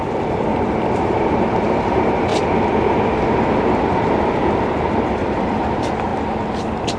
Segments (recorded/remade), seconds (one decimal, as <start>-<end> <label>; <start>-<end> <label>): 0.0-0.5 remade; 0.5-1.1 recorded; 1.1-2.3 remade; 2.3-4.8 recorded; 4.8-6.1 remade; 6.1-7.0 recorded